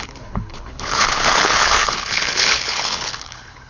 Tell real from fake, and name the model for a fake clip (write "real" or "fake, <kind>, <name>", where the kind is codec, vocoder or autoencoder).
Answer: fake, codec, HILCodec